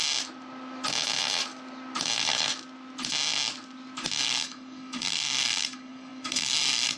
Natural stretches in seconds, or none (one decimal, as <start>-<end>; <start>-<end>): 0.0-4.2